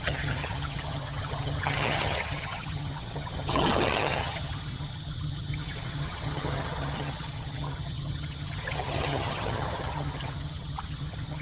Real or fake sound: fake